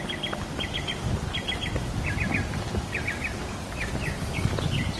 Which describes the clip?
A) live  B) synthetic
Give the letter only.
A